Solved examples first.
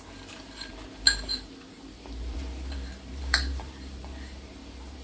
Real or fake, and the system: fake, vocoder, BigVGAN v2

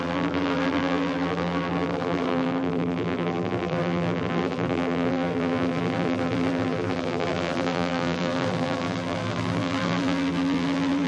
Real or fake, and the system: fake, vocoder, BigVGAN v2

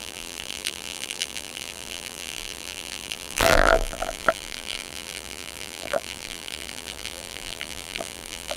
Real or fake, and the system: fake, vocoder, BigVGAN v2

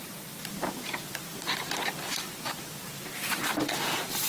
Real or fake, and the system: fake, vocoder, BigVGAN v2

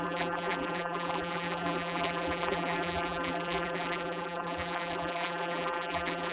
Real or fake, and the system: fake, vocoder, BigVGAN v2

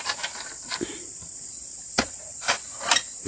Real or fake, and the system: fake, vocoder, BigVGAN v2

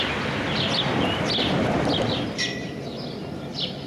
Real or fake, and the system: real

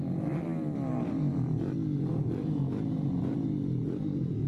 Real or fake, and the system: fake, vocoder, BigVGAN v2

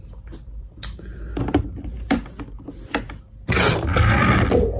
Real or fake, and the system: real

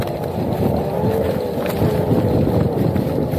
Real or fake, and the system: real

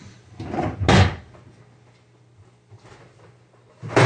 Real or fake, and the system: real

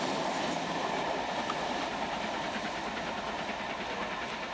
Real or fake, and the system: real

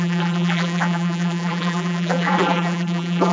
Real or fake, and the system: fake, vocoder, BigVGAN v2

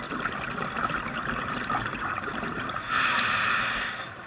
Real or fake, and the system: real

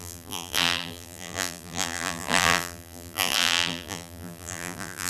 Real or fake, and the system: fake, vocoder, BigVGAN v2